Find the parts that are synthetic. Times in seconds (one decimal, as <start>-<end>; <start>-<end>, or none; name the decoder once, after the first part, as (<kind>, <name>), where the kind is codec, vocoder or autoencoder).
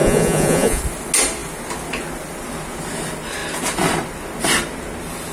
0.0-0.8 (vocoder, Vocos)